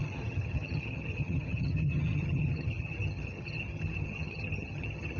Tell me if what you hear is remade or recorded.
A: remade